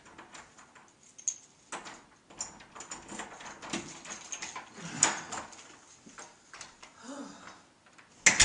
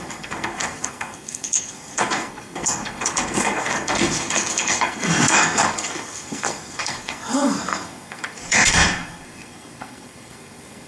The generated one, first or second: second